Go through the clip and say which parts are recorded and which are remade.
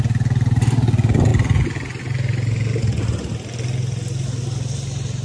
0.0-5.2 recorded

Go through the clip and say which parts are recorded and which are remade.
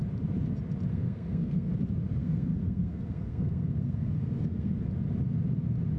0.0-0.9 recorded; 0.9-1.7 remade; 1.7-2.2 recorded; 2.2-4.7 remade; 4.7-6.0 recorded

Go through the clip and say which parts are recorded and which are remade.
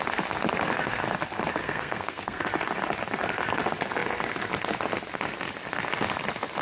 0.0-1.6 recorded; 1.6-2.4 remade; 2.4-6.6 recorded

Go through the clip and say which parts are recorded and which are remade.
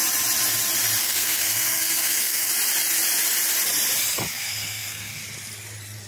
0.0-1.0 recorded; 1.0-2.5 remade; 2.5-4.3 recorded; 4.3-5.2 remade; 5.2-6.1 recorded